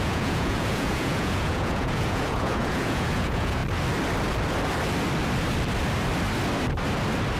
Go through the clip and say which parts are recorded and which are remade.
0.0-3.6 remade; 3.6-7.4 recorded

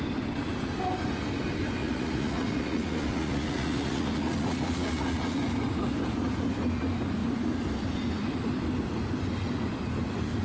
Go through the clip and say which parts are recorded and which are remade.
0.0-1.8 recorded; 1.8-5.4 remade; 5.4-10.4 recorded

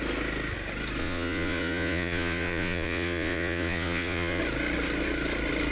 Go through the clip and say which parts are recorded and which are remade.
0.0-1.0 recorded; 1.0-4.4 remade; 4.4-5.7 recorded

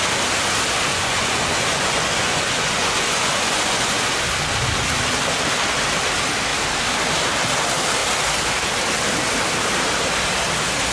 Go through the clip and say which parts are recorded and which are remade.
0.0-0.9 recorded; 0.9-4.1 remade; 4.1-10.9 recorded

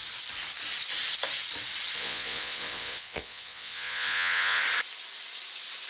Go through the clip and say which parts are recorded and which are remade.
0.0-2.0 recorded; 2.0-4.6 remade; 4.6-5.9 recorded